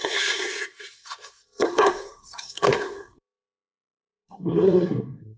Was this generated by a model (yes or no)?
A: yes